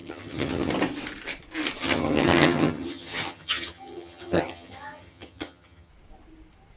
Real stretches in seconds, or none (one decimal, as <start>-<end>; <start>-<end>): 0.7-1.8; 5.9-6.8